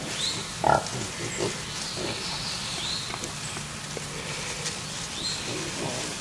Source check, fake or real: real